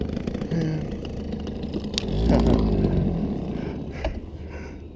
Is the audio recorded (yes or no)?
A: yes